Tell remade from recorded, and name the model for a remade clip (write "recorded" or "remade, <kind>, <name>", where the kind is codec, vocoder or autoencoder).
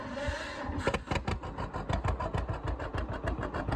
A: recorded